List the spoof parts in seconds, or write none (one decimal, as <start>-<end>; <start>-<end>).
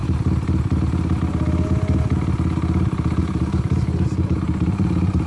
3.2-5.3